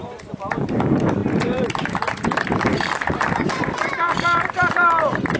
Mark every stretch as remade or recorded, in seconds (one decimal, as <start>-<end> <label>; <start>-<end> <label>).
0.0-5.4 remade